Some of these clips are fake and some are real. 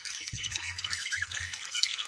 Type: fake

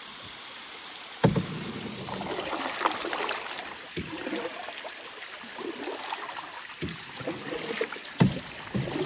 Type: fake